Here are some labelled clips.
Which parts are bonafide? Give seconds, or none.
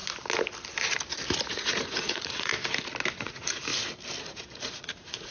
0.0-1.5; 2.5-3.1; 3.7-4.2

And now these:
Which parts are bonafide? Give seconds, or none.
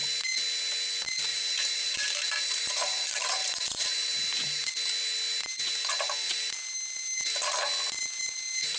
0.0-1.3; 4.7-8.8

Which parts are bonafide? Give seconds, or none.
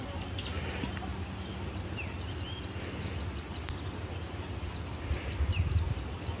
0.0-6.4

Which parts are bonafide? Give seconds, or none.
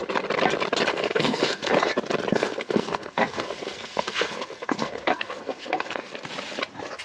0.0-0.9; 1.7-2.3; 6.1-7.0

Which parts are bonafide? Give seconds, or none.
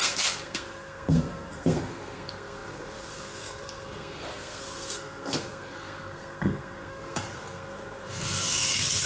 none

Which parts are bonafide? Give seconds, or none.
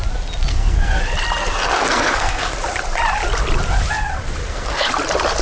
0.0-0.5; 1.0-1.4; 2.5-4.4; 4.9-5.4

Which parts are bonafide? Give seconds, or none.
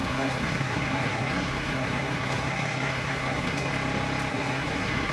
3.7-4.3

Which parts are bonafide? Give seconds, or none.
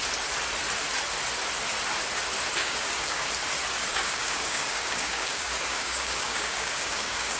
0.0-2.6; 3.3-3.9